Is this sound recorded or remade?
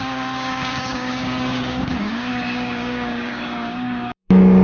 remade